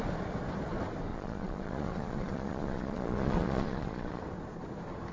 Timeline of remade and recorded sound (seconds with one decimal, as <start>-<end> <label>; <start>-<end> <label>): 0.0-1.1 recorded; 1.1-4.2 remade; 4.2-5.1 recorded